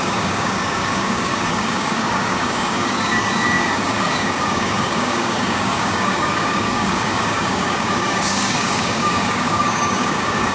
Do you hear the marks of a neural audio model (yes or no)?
yes